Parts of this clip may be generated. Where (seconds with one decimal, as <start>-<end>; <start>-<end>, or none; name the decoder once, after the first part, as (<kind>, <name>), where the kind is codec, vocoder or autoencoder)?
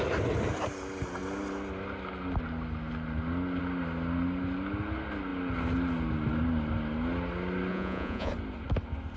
7.7-8.3 (vocoder, Vocos)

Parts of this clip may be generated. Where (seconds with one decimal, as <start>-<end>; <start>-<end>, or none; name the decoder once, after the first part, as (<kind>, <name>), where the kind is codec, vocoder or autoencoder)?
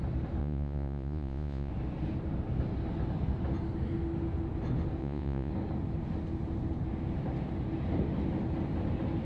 0.4-1.7 (vocoder, Vocos); 5.0-5.5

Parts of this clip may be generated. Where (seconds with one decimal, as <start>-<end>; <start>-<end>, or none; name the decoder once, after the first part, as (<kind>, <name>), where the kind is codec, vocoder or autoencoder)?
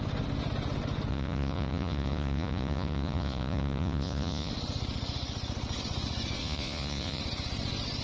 1.1-4.5 (vocoder, Vocos); 6.4-7.2